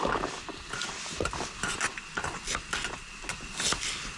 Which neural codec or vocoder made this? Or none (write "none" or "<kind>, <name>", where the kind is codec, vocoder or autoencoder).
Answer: none